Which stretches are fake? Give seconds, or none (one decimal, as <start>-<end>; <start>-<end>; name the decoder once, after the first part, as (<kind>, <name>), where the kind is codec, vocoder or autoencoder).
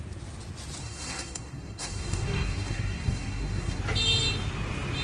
0.8-3.8 (codec, SNAC)